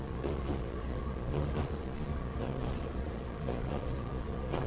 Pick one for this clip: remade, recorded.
remade